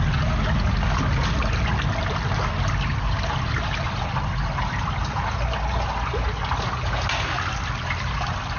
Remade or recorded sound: recorded